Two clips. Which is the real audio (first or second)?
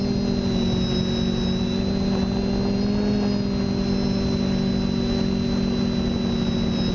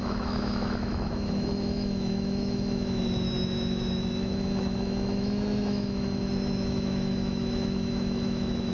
first